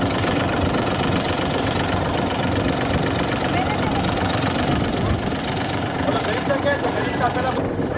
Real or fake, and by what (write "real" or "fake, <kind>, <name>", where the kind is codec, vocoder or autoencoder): real